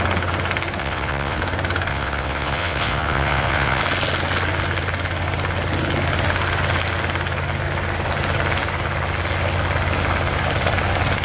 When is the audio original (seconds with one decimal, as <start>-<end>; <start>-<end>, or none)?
0.0-0.8; 1.4-1.9; 3.8-11.2